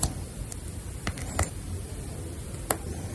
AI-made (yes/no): yes